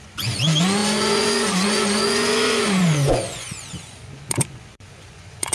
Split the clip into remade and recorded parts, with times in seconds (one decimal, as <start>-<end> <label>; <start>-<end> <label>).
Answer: 0.0-5.5 remade